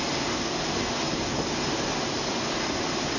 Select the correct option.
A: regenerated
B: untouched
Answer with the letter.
B